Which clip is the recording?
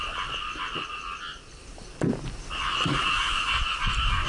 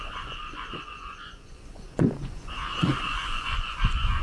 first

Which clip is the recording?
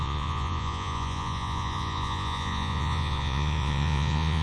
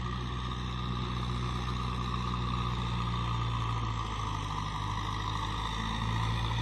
second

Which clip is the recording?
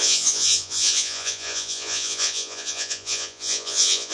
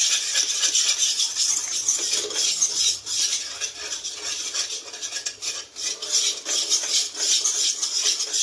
second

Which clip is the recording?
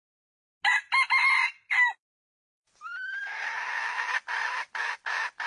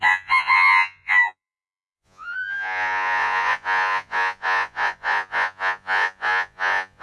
first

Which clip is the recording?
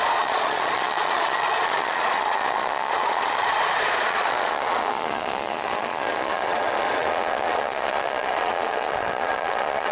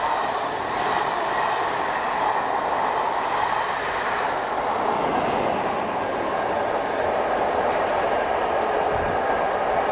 second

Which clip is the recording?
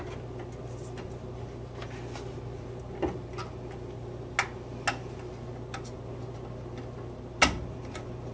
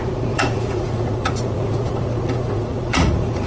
first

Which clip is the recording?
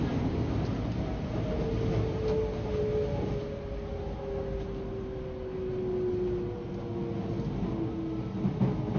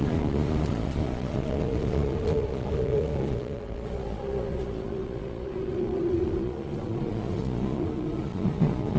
first